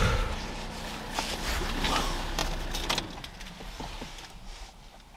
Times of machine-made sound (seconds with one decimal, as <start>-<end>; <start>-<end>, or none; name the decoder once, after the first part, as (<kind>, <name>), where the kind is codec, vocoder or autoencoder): none